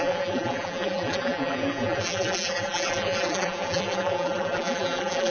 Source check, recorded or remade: remade